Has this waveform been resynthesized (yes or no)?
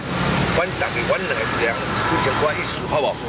no